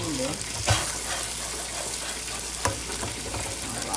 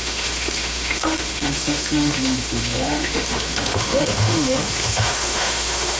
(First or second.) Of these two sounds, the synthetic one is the second